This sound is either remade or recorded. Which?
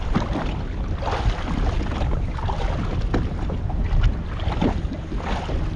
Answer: recorded